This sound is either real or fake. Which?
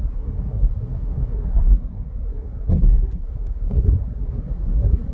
fake